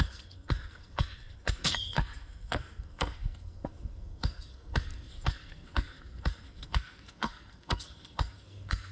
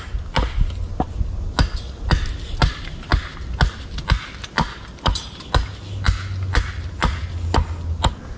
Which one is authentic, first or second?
second